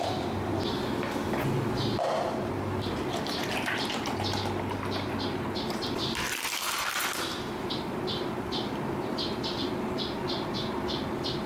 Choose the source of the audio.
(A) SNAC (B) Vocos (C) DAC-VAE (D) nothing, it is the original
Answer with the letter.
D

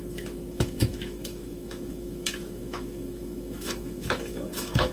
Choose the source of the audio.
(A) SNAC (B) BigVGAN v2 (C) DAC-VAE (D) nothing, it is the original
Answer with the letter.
C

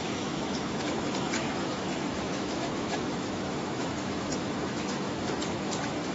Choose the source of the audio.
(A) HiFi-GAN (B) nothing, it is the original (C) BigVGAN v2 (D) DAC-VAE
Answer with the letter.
D